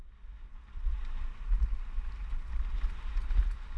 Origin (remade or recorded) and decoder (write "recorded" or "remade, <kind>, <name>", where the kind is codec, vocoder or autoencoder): recorded